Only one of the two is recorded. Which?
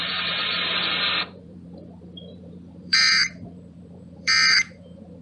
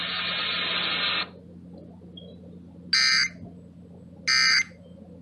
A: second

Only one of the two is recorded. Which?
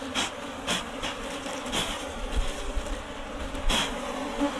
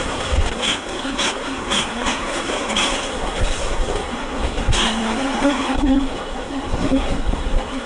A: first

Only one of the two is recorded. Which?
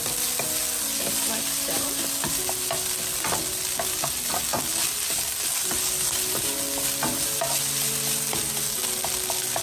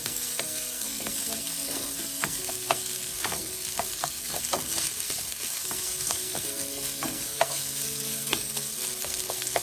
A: first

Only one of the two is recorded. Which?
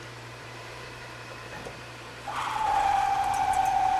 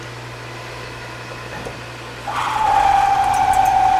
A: second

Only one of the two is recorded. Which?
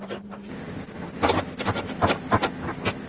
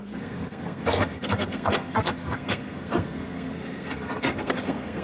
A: first